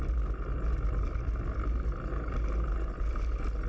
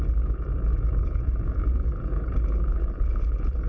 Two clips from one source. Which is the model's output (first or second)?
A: second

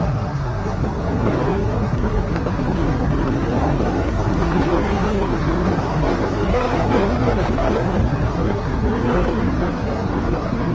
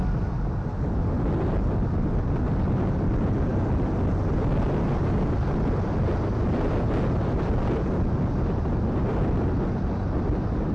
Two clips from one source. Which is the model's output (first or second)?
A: first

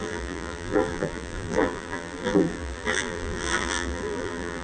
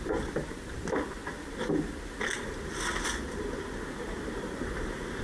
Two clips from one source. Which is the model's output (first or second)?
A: first